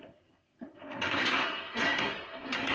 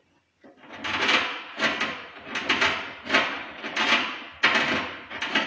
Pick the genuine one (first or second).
second